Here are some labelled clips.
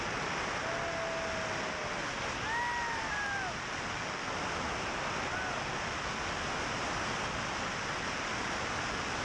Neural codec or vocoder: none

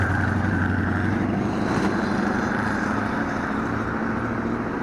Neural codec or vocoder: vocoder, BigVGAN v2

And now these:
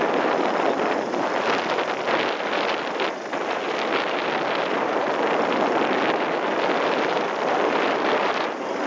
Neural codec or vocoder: none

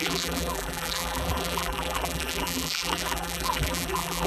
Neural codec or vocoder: vocoder, BigVGAN v2